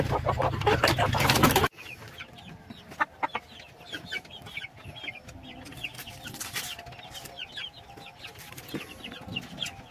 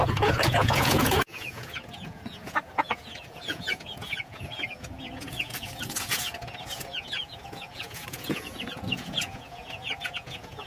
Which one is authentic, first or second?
first